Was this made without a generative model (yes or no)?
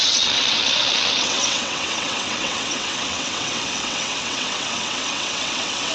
no